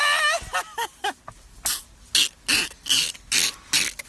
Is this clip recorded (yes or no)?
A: yes